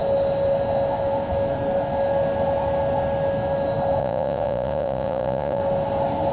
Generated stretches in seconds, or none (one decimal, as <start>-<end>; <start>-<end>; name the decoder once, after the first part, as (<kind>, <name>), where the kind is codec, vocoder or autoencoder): 4.0-5.6 (vocoder, Vocos)